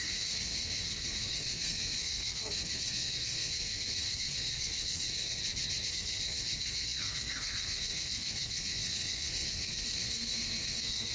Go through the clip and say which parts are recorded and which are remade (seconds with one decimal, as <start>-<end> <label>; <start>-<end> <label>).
0.0-5.4 remade; 5.4-5.9 recorded; 5.9-11.1 remade